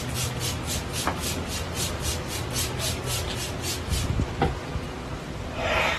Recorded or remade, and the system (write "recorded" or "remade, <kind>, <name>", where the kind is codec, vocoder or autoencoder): recorded